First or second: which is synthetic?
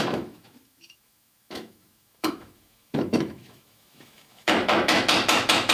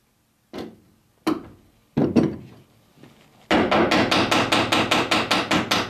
first